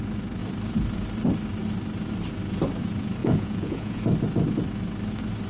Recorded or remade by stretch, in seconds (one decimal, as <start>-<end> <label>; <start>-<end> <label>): 0.0-3.2 recorded; 3.2-4.0 remade; 4.0-5.5 recorded